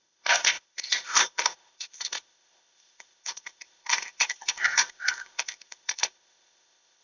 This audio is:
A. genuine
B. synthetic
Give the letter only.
B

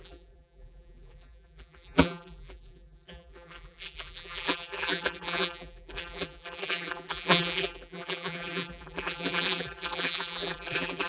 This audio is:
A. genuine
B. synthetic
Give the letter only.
B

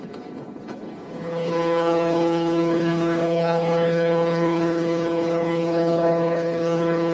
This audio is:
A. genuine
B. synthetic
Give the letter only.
B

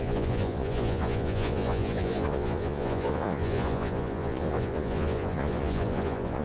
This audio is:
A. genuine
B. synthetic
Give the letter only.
B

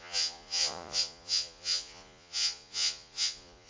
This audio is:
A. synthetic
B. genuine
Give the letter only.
A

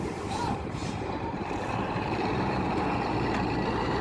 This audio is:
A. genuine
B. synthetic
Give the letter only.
B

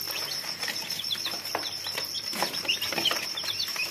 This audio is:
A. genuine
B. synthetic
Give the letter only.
A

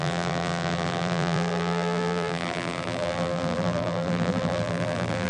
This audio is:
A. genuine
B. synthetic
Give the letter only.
B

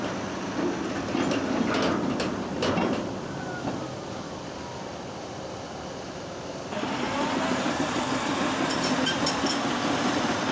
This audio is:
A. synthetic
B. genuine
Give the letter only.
B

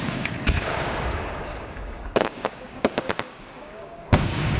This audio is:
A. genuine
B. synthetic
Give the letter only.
B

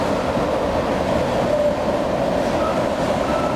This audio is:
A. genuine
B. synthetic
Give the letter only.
A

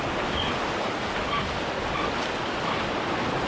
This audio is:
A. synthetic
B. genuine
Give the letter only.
B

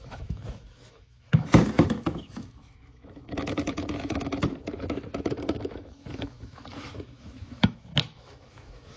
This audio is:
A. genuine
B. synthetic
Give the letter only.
B